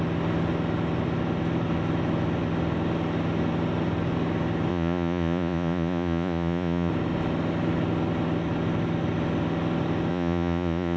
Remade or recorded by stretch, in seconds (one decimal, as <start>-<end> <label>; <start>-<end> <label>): 0.0-4.7 recorded; 4.7-6.9 remade; 6.9-10.1 recorded; 10.1-11.0 remade